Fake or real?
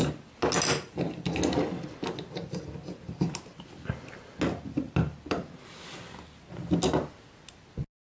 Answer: real